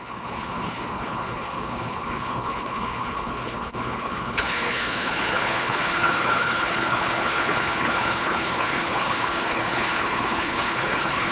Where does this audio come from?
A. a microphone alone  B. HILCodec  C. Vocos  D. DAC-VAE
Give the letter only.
B